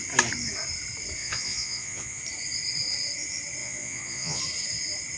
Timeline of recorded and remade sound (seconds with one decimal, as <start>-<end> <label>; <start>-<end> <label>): 0.0-1.2 recorded; 1.2-2.2 remade; 2.2-3.6 recorded; 3.6-4.4 remade; 4.4-5.2 recorded